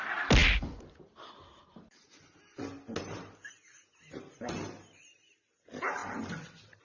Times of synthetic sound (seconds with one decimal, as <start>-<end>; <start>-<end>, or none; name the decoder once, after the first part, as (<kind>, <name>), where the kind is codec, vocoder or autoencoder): none